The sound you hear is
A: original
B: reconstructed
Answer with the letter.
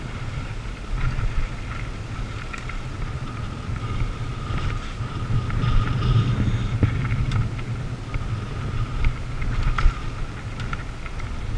A